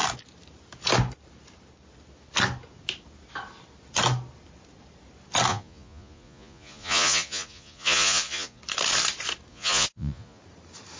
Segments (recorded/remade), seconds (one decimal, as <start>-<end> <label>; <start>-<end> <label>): 0.0-5.5 recorded; 5.5-8.6 remade; 8.6-9.5 recorded; 9.5-10.4 remade; 10.4-11.0 recorded